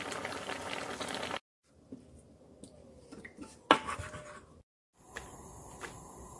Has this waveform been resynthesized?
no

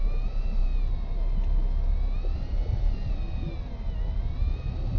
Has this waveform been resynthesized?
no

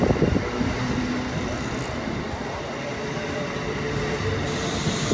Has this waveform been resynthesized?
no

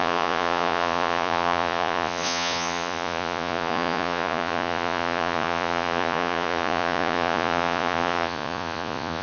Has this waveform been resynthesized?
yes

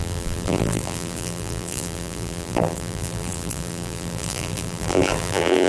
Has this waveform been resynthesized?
yes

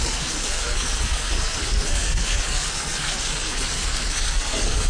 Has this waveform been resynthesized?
yes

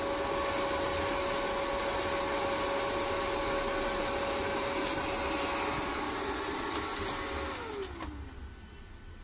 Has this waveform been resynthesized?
no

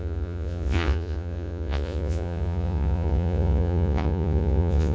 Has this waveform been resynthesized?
yes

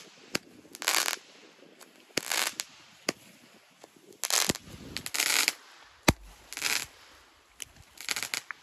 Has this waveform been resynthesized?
no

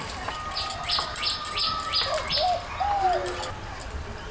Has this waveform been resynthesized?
no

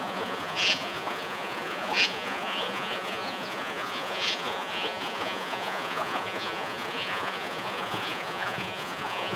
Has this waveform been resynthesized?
yes